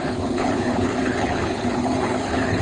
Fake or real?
fake